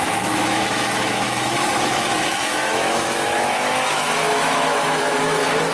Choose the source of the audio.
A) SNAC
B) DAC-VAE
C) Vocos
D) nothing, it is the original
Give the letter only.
B